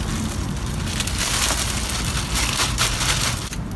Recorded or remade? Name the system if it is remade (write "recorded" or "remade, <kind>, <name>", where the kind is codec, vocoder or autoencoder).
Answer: recorded